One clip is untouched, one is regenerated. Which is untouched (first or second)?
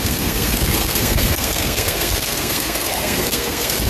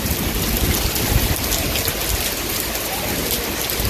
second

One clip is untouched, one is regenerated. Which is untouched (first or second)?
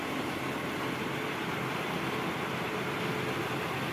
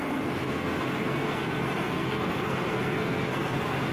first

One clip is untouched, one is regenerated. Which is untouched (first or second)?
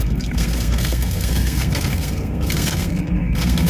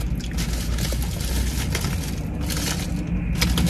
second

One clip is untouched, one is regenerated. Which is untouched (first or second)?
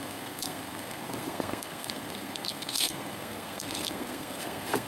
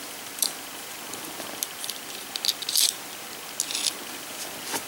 second